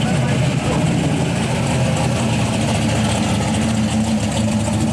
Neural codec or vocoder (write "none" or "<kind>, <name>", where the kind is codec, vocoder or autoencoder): none